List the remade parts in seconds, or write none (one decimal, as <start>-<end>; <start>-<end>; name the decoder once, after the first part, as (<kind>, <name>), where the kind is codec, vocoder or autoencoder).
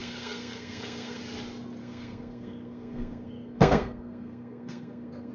0.0-1.2 (codec, SNAC); 1.8-5.3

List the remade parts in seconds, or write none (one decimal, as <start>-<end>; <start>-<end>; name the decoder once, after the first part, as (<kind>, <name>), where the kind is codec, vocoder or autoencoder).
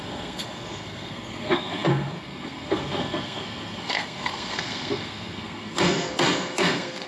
0.0-7.1 (codec, SNAC)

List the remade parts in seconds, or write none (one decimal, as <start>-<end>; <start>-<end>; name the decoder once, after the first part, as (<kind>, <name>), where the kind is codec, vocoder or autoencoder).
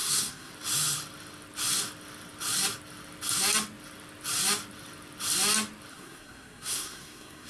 0.0-0.5 (codec, SNAC); 5.9-7.5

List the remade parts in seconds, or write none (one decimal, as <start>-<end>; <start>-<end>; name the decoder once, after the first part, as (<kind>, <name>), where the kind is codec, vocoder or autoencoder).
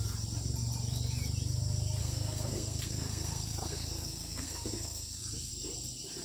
2.0-5.5 (codec, SNAC)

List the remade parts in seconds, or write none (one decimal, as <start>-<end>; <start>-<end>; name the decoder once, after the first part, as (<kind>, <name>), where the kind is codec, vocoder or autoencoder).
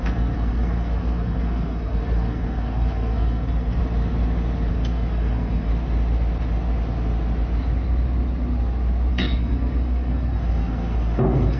0.0-3.8 (codec, SNAC); 4.7-5.7; 9.1-11.6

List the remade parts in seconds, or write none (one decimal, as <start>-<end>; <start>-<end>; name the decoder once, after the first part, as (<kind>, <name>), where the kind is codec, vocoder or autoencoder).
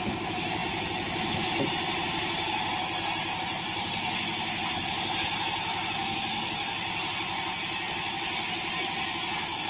none